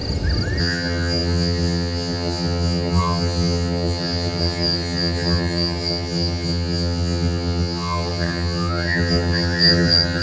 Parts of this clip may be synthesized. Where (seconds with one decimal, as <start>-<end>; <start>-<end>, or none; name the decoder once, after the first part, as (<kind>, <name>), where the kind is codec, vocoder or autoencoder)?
0.6-10.2 (vocoder, HiFi-GAN)